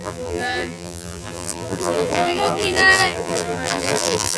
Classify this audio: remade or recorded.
remade